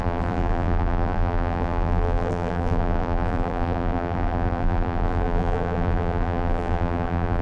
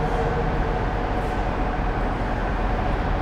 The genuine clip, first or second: second